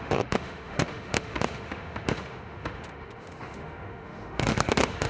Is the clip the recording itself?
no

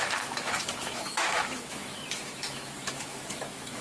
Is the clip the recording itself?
no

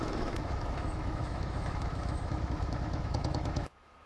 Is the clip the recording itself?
no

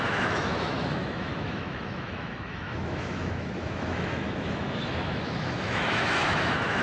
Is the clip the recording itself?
no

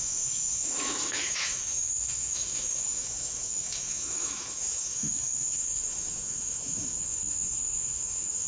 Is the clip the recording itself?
no